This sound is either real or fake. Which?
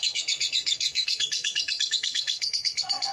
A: fake